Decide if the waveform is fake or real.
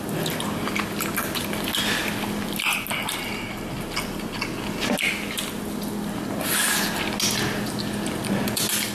real